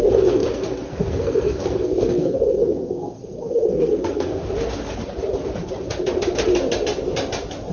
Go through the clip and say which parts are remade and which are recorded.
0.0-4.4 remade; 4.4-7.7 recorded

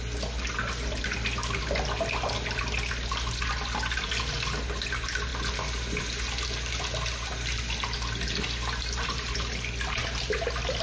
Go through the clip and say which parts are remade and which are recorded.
0.0-10.8 recorded

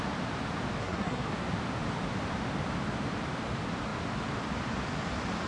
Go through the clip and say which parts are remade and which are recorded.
0.0-0.8 recorded; 0.8-1.3 remade; 1.3-5.5 recorded

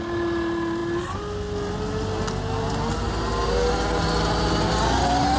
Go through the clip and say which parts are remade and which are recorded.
0.0-5.4 recorded

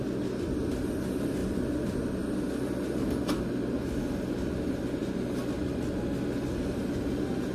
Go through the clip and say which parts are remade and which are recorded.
0.0-7.5 recorded